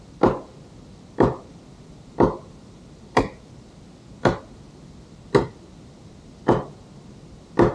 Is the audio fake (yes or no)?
no